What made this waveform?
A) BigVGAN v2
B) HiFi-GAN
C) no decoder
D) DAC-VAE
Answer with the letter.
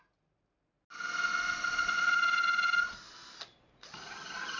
C